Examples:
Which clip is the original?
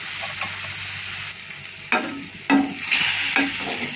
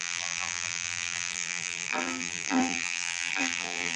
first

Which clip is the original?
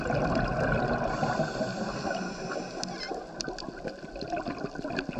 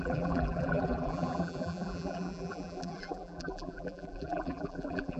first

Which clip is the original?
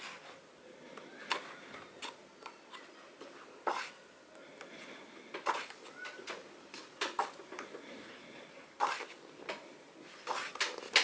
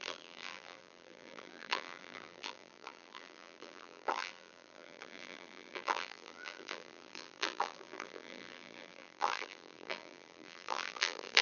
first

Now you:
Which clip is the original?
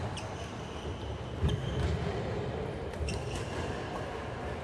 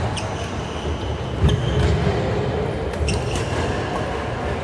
second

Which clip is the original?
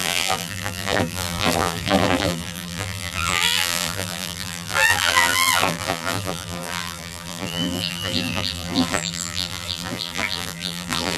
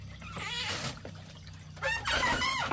second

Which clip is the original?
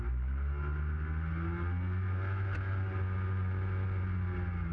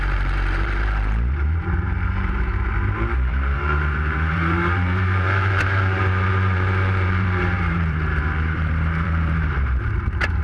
first